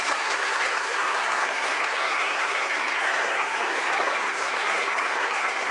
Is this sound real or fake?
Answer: fake